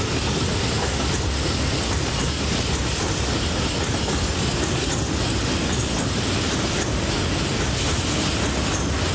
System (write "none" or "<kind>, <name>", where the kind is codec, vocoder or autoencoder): none